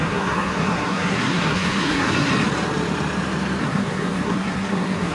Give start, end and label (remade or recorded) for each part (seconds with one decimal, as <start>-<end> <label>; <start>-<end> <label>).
0.0-2.3 remade; 2.3-3.6 recorded; 3.6-5.1 remade